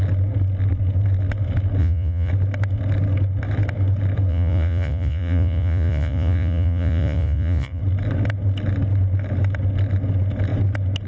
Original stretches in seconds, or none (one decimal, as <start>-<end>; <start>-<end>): 0.0-1.8; 2.3-4.3; 7.8-11.1